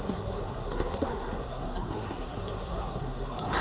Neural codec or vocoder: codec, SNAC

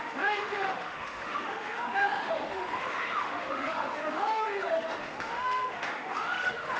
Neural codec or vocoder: autoencoder, DAC-VAE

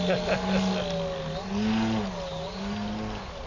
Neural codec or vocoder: none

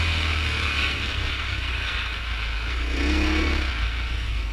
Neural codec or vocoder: codec, SNAC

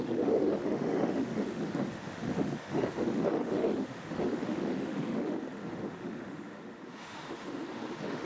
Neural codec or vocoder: autoencoder, DAC-VAE